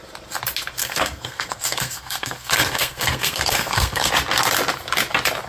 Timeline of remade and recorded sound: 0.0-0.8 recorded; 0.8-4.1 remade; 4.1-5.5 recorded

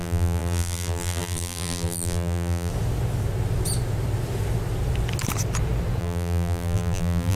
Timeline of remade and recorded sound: 0.0-2.7 remade; 2.7-6.0 recorded; 6.0-7.4 remade

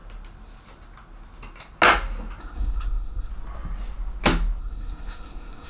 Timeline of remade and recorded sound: 0.0-2.4 recorded; 2.4-3.3 remade; 3.3-4.6 recorded; 4.6-5.7 remade